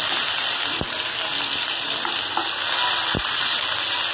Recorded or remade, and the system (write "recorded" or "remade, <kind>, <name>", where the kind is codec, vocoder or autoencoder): recorded